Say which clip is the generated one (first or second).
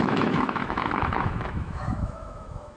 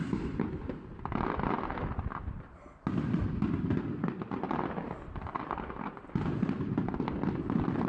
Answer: first